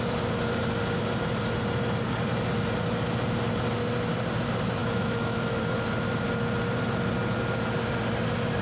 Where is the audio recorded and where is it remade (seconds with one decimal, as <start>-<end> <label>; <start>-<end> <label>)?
0.0-4.8 recorded; 4.8-5.6 remade; 5.6-8.6 recorded

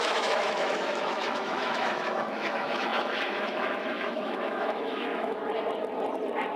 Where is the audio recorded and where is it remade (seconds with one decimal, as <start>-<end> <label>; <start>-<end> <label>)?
0.0-5.4 remade; 5.4-6.6 recorded

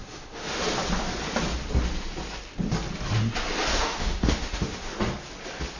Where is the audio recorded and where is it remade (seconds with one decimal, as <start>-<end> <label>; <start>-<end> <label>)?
0.0-0.6 remade; 0.6-3.7 recorded; 3.7-4.9 remade; 4.9-5.8 recorded

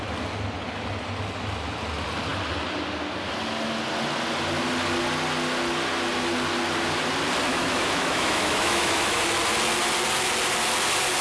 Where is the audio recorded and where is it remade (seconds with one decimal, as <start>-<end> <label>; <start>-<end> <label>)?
0.0-7.5 recorded; 7.5-9.2 remade; 9.2-11.2 recorded

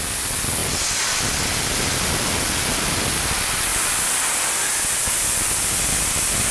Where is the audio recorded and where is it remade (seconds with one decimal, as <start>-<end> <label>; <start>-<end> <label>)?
0.0-6.5 recorded

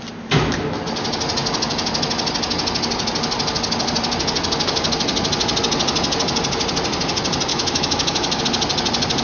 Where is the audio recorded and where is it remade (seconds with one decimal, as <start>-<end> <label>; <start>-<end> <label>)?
0.0-7.5 recorded; 7.5-8.4 remade; 8.4-9.2 recorded